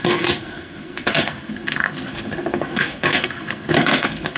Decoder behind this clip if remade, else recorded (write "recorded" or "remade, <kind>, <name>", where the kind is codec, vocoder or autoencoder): remade, codec, SNAC